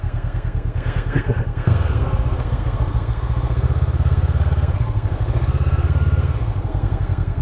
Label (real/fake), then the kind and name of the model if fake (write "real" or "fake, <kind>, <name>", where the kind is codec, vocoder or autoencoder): fake, codec, SNAC